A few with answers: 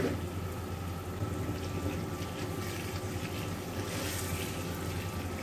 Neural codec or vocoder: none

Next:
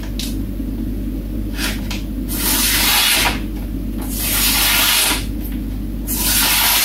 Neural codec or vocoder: none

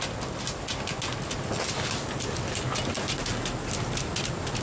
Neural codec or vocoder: none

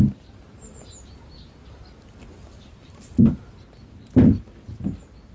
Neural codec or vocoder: none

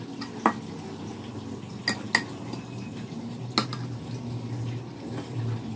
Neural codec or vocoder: none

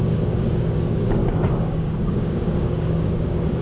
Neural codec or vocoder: codec, DAC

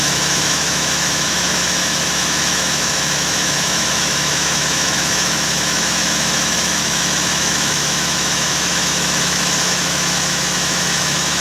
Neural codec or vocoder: autoencoder, DAC-VAE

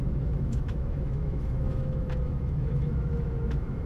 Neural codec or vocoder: autoencoder, DAC-VAE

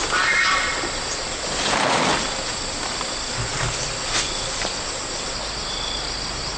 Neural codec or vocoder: none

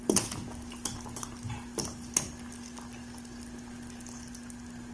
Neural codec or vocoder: none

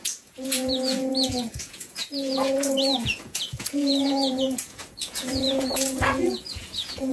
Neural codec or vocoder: vocoder, Vocos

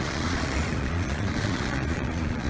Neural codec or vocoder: vocoder, Vocos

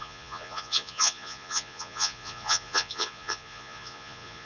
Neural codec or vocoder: vocoder, Vocos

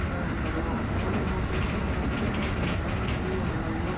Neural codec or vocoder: none